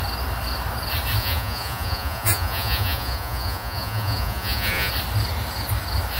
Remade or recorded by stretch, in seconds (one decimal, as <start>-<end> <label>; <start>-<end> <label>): 0.0-1.2 recorded; 1.2-4.9 remade; 4.9-6.2 recorded